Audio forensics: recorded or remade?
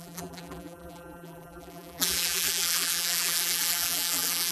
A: remade